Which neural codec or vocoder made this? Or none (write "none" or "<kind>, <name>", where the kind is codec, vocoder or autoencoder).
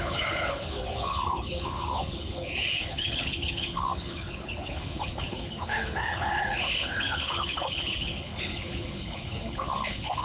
codec, HILCodec